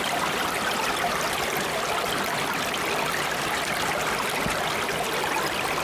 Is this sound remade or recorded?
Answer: recorded